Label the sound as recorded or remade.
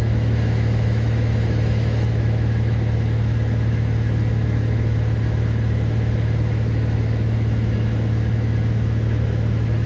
remade